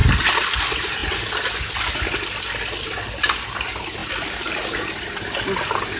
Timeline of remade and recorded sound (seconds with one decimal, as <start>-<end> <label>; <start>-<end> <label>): 0.0-6.0 recorded

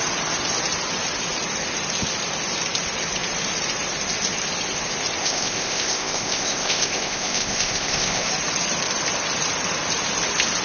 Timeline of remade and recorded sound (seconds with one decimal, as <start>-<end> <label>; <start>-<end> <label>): 0.0-5.2 recorded; 5.2-8.3 remade; 8.3-10.6 recorded

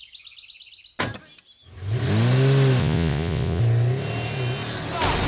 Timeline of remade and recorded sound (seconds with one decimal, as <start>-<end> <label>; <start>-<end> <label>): 0.0-2.8 recorded; 2.8-3.6 remade; 3.6-5.3 recorded

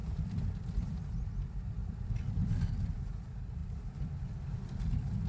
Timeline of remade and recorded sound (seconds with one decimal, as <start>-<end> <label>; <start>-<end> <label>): 0.0-1.3 remade; 1.3-1.8 recorded; 1.8-2.6 remade; 2.6-5.3 recorded

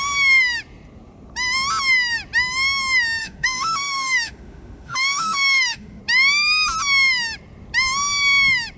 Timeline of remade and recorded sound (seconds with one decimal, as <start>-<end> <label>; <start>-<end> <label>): 0.0-3.2 recorded; 3.2-6.0 remade; 6.0-8.8 recorded

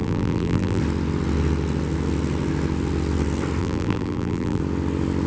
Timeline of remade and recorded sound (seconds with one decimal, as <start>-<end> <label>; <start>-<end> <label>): 0.0-0.8 remade; 0.8-3.6 recorded; 3.6-4.6 remade; 4.6-5.3 recorded

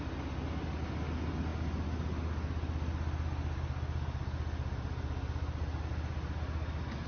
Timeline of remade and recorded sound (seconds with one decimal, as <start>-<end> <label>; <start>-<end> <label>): 0.0-7.1 recorded

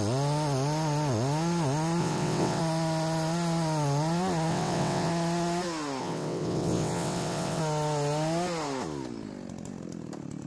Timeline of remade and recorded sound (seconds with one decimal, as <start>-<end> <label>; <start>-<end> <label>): 0.0-2.0 recorded; 2.0-2.6 remade; 2.6-4.5 recorded; 4.5-5.1 remade; 5.1-6.0 recorded; 6.0-7.6 remade; 7.6-10.5 recorded